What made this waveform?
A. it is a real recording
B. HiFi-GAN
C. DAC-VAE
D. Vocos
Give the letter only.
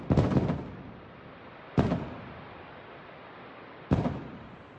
A